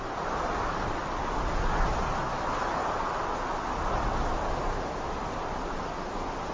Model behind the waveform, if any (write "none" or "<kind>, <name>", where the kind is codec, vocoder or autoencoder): none